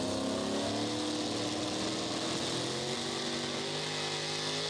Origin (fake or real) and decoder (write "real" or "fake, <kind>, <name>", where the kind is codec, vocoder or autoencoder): real